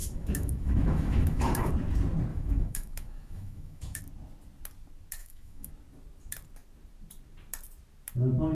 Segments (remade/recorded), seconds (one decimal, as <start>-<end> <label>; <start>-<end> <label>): 0.0-1.7 remade; 1.7-2.3 recorded; 2.3-4.0 remade; 4.0-5.2 recorded; 5.2-5.7 remade; 5.7-8.5 recorded